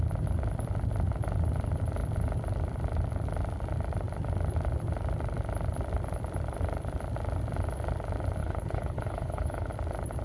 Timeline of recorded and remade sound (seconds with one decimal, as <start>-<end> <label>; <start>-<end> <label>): 0.0-8.4 recorded; 8.4-9.7 remade; 9.7-10.2 recorded